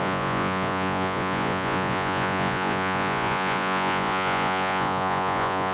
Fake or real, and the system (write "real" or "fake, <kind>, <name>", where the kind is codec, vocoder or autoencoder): fake, vocoder, Vocos